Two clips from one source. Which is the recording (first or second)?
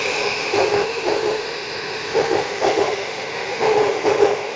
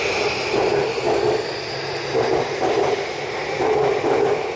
second